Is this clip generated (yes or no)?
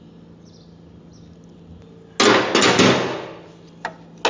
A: no